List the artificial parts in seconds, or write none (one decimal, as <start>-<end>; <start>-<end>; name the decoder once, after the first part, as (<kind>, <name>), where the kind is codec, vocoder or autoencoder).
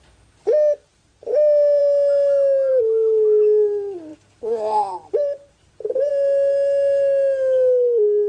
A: 4.1-6.1 (vocoder, BigVGAN v2)